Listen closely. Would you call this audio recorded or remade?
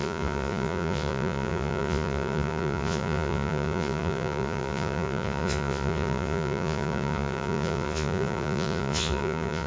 remade